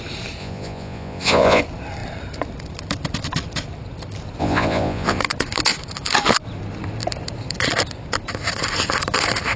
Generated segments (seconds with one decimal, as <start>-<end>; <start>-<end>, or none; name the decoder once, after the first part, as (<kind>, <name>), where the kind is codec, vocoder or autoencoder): 0.4-1.6 (vocoder, Vocos); 4.4-5.2